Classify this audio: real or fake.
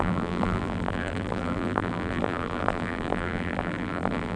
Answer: fake